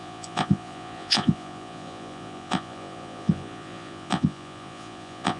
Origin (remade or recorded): remade